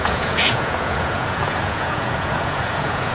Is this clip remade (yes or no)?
yes